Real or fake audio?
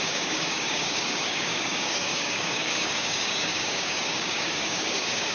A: fake